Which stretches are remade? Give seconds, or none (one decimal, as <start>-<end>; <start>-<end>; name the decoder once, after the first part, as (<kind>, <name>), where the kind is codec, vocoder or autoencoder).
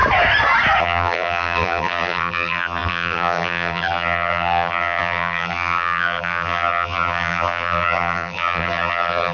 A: 0.8-9.3 (vocoder, BigVGAN v2)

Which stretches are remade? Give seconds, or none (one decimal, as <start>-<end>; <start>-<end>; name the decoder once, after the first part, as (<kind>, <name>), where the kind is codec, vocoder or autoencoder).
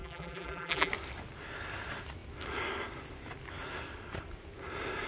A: 0.0-0.9 (vocoder, BigVGAN v2)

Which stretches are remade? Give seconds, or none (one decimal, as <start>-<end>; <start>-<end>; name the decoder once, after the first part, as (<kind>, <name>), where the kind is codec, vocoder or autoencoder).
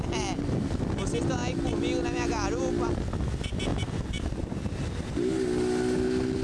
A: 3.7-5.2 (vocoder, BigVGAN v2)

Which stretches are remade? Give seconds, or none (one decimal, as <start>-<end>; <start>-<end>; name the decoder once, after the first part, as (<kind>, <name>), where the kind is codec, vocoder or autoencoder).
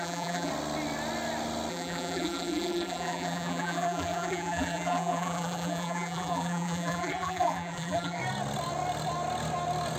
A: 0.0-0.5 (vocoder, BigVGAN v2); 1.7-8.2